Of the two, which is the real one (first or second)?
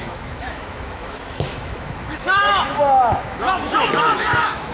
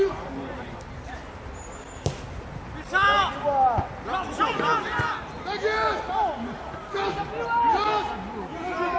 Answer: second